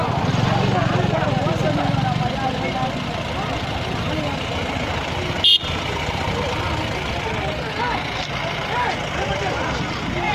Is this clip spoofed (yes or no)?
no